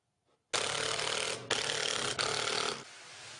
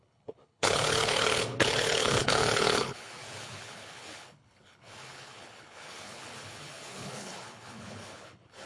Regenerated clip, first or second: second